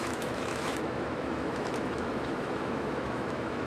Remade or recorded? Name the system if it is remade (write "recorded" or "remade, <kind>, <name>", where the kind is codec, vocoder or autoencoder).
remade, autoencoder, DAC-VAE